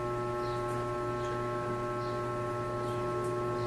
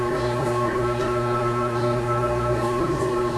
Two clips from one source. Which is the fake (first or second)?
second